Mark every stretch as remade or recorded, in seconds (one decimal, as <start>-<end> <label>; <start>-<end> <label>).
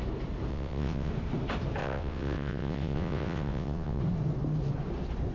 0.0-0.5 recorded; 0.5-1.1 remade; 1.1-1.8 recorded; 1.8-4.0 remade; 4.0-5.3 recorded